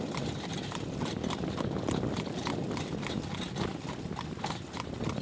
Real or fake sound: fake